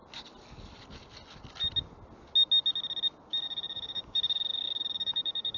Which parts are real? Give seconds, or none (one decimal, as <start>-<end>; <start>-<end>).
0.0-3.4